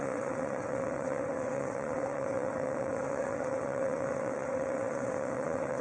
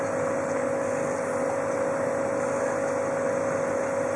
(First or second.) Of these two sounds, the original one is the second